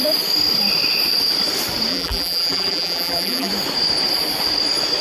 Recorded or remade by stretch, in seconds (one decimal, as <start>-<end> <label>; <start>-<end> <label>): 0.0-1.9 recorded; 1.9-3.5 remade; 3.5-5.0 recorded